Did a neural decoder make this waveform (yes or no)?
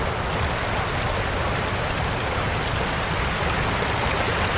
no